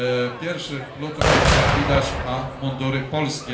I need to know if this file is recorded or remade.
recorded